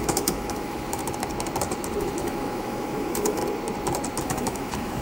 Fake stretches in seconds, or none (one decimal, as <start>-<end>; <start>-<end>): 0.0-1.0; 2.0-3.4; 4.2-5.0